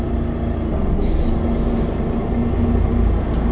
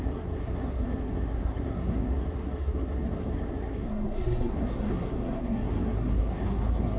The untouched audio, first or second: first